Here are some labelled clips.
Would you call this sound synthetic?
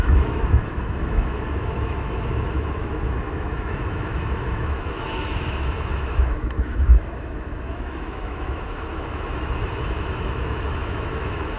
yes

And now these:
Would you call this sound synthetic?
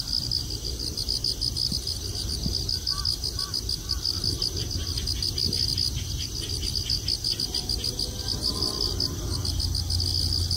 no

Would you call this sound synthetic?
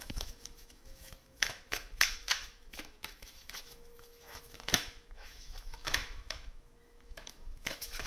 yes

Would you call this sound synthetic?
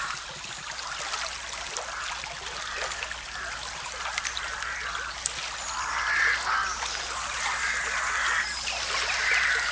no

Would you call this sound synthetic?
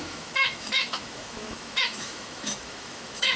yes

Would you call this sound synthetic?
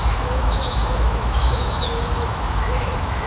yes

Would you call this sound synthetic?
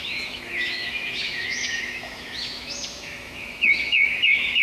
yes